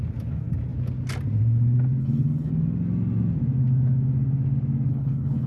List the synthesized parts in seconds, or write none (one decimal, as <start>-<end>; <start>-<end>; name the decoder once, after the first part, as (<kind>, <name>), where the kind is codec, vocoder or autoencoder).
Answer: 2.0-2.5 (codec, HILCodec); 4.9-5.5